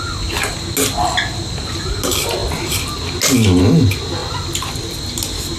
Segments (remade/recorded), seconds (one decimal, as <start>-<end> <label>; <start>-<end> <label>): 0.0-4.2 recorded; 4.2-5.0 remade; 5.0-5.6 recorded